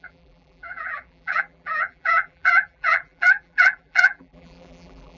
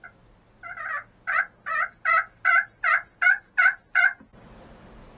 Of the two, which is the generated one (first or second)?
first